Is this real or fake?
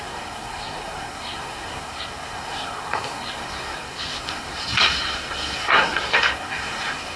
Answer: fake